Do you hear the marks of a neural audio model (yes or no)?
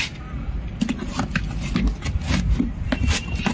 no